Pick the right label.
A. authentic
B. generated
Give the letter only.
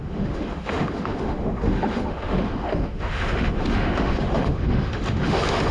B